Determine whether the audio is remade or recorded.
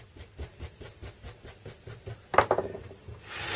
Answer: recorded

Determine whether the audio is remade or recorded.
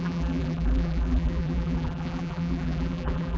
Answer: remade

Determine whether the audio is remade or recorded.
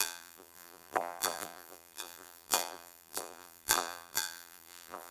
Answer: remade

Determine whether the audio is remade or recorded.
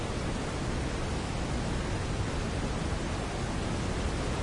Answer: recorded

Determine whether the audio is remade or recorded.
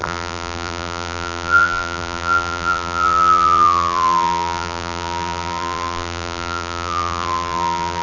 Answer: remade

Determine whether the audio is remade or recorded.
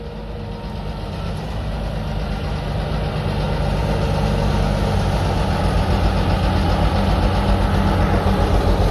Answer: recorded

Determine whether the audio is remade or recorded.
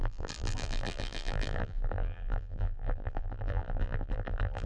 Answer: remade